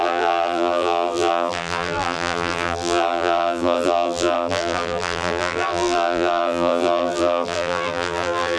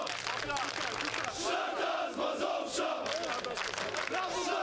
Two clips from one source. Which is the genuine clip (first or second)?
second